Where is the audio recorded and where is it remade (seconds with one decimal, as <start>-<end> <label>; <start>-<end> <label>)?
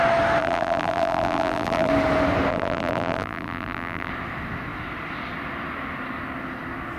0.0-0.4 recorded; 0.4-1.9 remade; 1.9-2.5 recorded; 2.5-4.1 remade; 4.1-7.0 recorded